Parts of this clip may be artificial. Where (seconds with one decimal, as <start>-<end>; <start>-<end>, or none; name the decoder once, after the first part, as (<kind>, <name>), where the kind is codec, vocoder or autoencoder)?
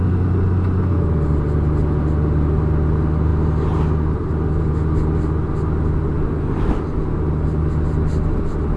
none